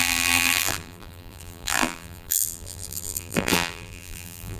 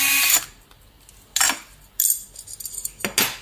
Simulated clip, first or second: first